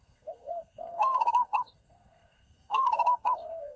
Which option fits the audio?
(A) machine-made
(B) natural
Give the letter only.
A